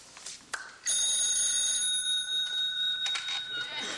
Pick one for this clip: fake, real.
real